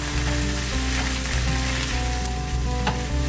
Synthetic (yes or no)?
no